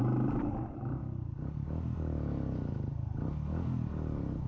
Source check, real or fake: real